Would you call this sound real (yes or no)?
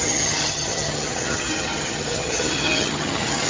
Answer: no